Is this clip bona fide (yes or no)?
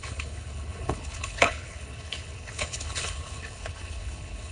no